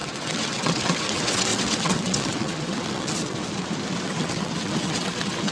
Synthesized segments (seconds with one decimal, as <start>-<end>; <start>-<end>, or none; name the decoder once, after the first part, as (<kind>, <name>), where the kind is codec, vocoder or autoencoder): 0.0-3.4 (vocoder, WaveNeXt); 4.0-5.5